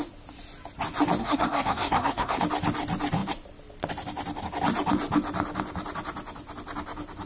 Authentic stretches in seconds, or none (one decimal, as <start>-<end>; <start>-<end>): 0.0-1.2; 2.4-7.3